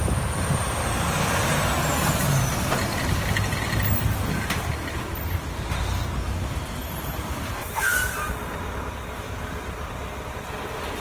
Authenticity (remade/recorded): recorded